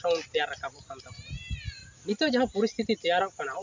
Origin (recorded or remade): recorded